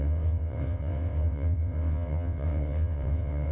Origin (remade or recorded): remade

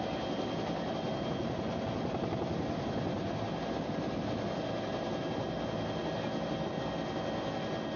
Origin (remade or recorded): recorded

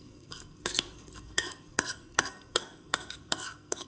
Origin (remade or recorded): remade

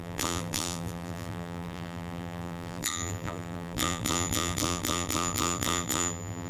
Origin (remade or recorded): remade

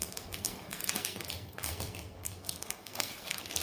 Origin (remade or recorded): remade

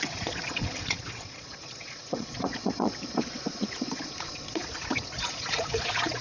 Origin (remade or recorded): remade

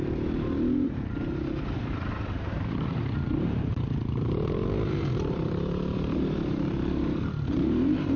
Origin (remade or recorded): remade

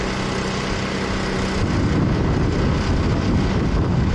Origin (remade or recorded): recorded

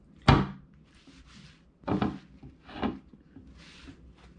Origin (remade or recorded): recorded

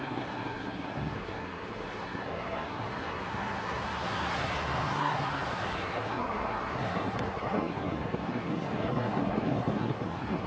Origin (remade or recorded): remade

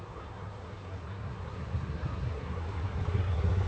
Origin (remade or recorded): remade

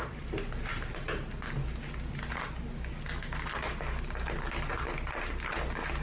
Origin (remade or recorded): recorded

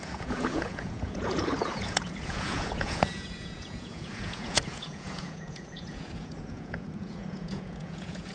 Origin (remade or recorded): remade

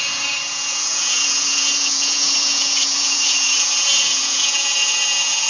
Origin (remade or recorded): remade